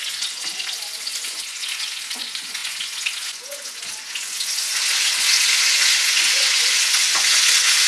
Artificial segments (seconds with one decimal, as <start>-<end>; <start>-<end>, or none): 0.0-7.9